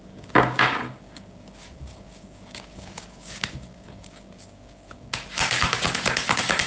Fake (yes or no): yes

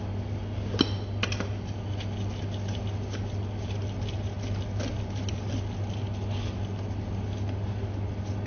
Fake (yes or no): no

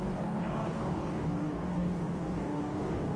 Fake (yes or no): yes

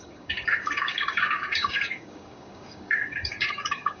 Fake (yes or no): yes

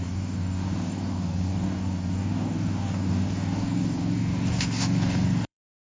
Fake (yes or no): yes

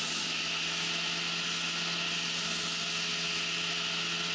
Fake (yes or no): no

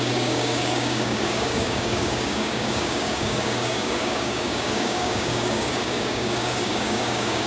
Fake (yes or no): yes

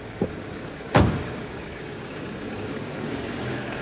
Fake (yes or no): yes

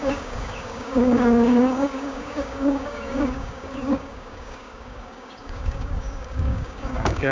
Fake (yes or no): yes